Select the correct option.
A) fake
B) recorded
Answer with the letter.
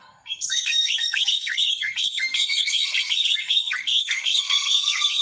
A